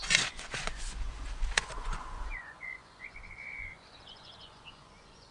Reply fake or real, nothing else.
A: fake